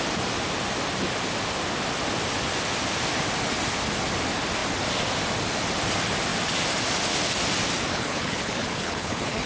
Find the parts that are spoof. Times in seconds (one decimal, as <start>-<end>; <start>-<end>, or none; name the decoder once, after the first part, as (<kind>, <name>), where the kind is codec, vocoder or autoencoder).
7.9-9.5 (codec, HILCodec)